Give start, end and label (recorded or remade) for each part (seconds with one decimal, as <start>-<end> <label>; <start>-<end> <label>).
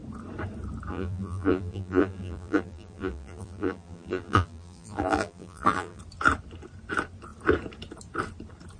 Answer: 0.0-0.9 recorded; 0.9-6.0 remade; 6.0-8.8 recorded